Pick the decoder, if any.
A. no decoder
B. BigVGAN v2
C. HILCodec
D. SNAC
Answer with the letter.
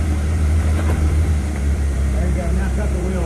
B